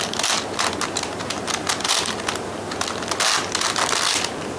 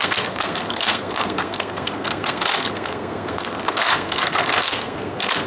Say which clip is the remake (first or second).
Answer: second